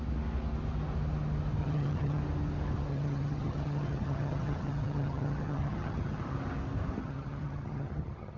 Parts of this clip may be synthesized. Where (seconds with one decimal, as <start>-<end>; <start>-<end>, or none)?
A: 1.6-2.2; 2.9-6.2; 7.0-8.4